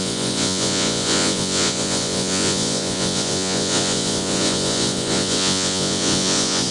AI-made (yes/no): yes